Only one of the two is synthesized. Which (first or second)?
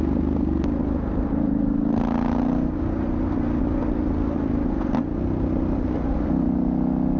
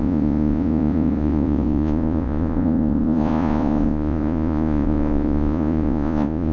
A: second